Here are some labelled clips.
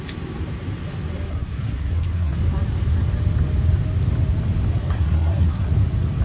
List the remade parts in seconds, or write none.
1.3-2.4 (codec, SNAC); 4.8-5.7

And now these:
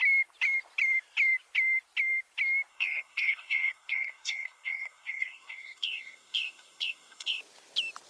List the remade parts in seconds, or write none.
2.7-7.4 (codec, SNAC)

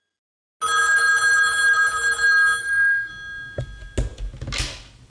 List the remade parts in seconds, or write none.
2.6-3.1 (codec, SNAC)

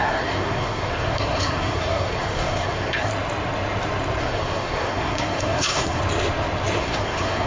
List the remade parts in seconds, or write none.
0.0-3.1 (codec, SNAC); 4.2-6.0; 6.8-7.5

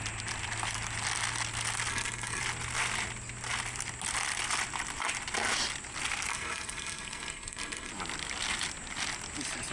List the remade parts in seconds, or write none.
1.9-2.4 (codec, SNAC); 6.3-7.9